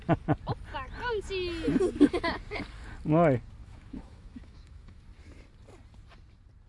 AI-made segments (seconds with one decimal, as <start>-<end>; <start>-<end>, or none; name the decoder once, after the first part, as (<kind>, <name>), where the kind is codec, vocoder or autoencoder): 3.6-5.0 (autoencoder, DAC-VAE)